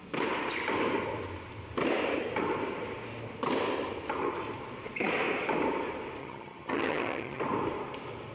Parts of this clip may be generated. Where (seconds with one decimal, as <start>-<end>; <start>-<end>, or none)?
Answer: 6.2-7.4